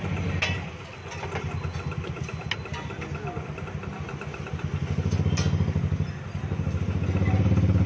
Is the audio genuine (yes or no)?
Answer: yes